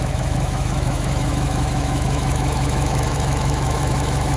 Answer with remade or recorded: remade